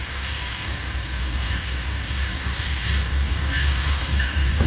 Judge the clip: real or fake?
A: fake